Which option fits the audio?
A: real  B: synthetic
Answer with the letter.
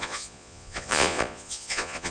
B